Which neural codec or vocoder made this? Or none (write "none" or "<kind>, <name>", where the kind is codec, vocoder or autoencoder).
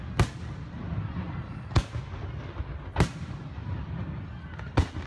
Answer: none